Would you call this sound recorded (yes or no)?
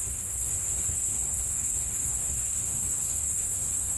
no